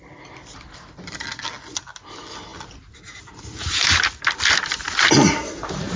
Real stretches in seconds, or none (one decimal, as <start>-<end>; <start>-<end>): 0.0-6.0

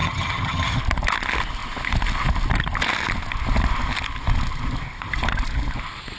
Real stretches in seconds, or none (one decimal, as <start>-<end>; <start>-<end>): 0.8-6.2